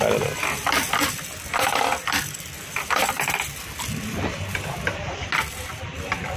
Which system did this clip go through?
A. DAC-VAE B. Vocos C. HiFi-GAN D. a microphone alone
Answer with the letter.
D